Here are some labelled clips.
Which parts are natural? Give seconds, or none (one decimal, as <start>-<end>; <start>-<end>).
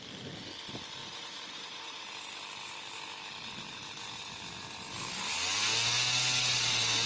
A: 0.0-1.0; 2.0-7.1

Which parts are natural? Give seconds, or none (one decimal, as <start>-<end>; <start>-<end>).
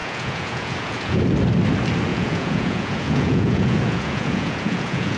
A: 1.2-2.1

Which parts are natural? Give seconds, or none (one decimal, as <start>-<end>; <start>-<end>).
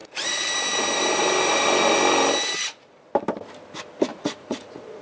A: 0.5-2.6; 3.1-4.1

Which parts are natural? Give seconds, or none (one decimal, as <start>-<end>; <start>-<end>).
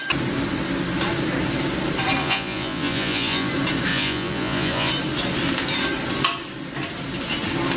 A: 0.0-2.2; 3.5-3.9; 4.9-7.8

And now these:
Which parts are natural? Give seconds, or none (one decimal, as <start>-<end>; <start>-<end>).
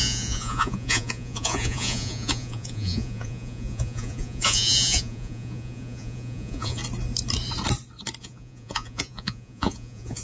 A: 6.8-8.2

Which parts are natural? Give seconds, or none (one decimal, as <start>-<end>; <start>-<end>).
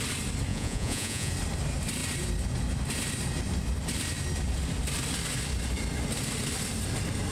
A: 0.0-0.5; 1.3-7.3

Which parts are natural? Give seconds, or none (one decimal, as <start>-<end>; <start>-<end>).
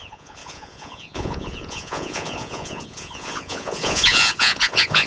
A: none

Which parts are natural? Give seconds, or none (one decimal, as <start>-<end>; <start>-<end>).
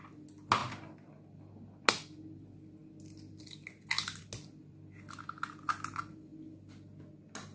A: 0.0-7.5